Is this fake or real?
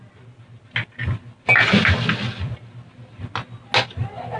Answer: real